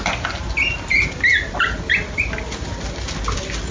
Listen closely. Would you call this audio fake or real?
real